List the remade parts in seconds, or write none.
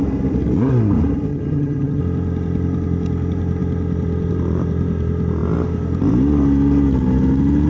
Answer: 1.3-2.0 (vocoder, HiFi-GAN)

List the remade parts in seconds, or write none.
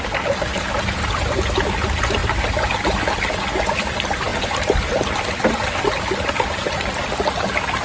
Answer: none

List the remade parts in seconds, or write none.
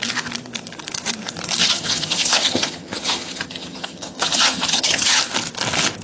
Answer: 1.6-5.2 (vocoder, HiFi-GAN)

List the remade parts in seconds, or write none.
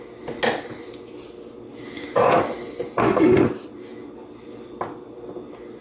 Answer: none